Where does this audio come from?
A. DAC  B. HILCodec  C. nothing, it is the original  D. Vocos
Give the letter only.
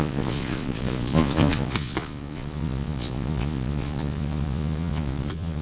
D